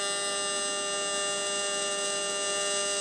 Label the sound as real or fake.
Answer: real